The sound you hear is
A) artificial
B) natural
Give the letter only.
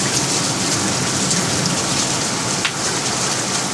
B